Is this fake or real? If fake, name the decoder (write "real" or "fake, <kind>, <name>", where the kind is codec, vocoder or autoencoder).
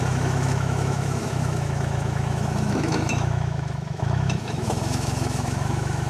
fake, autoencoder, DAC-VAE